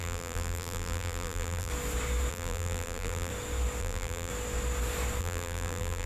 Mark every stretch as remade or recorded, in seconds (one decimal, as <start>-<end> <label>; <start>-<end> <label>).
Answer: 0.0-1.7 remade; 1.7-2.3 recorded; 2.3-3.3 remade; 3.3-3.8 recorded; 3.8-4.3 remade; 4.3-5.2 recorded; 5.2-6.1 remade